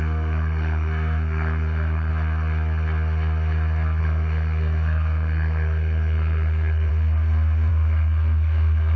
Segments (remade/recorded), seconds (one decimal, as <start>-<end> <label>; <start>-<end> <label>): 0.0-2.1 remade; 2.1-4.0 recorded; 4.0-6.9 remade; 6.9-7.7 recorded; 7.7-9.0 remade